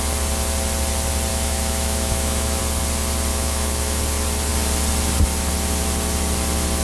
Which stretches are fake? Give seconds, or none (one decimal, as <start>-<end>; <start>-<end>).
1.3-2.6; 3.3-4.0